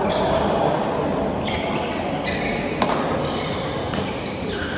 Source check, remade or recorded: recorded